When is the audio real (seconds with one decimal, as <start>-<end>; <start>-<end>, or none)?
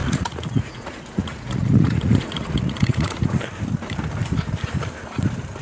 3.4-5.6